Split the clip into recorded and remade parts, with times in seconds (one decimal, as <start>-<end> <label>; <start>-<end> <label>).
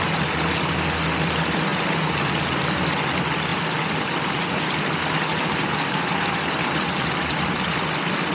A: 0.0-8.3 recorded